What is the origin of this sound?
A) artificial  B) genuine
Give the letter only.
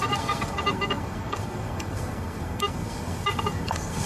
A